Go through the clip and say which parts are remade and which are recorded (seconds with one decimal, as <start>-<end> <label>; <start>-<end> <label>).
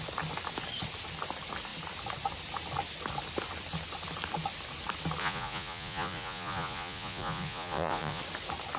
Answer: 0.0-5.2 recorded; 5.2-8.2 remade; 8.2-8.8 recorded